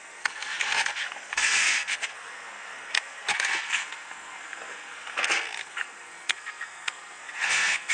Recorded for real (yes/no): no